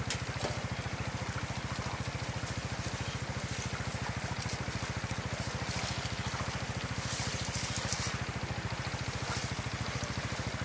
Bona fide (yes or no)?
yes